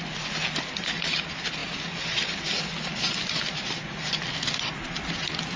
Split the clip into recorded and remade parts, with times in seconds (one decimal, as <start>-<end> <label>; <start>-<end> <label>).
0.0-5.6 recorded